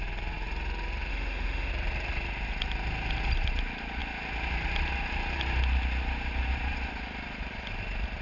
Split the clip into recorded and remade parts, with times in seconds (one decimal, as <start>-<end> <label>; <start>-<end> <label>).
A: 0.0-1.1 recorded; 1.1-1.7 remade; 1.7-8.2 recorded